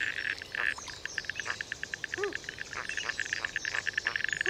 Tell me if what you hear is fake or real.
real